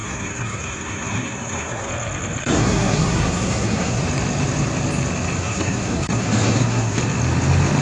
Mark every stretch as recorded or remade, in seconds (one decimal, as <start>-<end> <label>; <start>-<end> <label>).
0.0-1.9 remade; 1.9-2.4 recorded; 2.4-4.0 remade; 4.0-5.4 recorded; 5.4-7.0 remade; 7.0-7.8 recorded